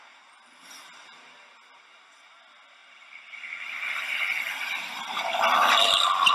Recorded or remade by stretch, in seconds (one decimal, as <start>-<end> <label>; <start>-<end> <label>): 0.0-6.3 recorded